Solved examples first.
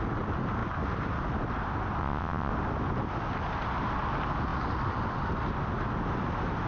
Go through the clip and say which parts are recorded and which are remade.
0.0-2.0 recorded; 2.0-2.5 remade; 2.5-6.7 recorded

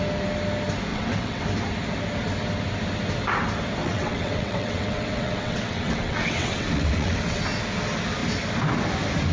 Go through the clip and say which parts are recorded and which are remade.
0.0-0.9 recorded; 0.9-1.4 remade; 1.4-3.8 recorded; 3.8-7.4 remade; 7.4-9.3 recorded

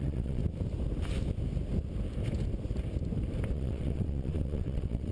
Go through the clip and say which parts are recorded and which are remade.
0.0-0.4 remade; 0.4-3.5 recorded; 3.5-5.1 remade

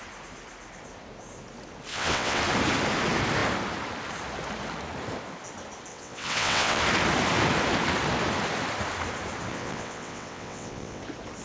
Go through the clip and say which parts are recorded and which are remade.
0.0-1.9 recorded; 1.9-2.4 remade; 2.4-5.9 recorded; 5.9-6.8 remade; 6.8-9.5 recorded; 9.5-11.0 remade; 11.0-11.4 recorded

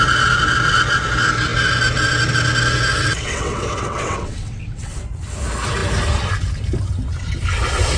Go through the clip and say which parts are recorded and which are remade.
0.0-2.9 recorded; 2.9-5.0 remade; 5.0-8.0 recorded

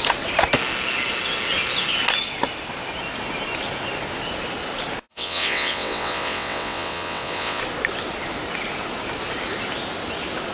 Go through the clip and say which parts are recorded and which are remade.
0.0-5.1 recorded; 5.1-7.6 remade; 7.6-10.5 recorded